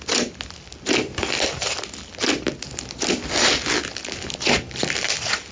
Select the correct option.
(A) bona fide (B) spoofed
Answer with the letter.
A